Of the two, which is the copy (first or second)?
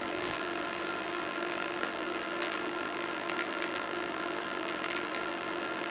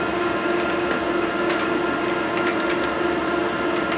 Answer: first